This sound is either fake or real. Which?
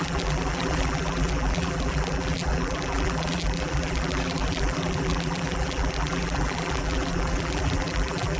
fake